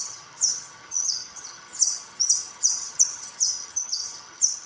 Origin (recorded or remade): remade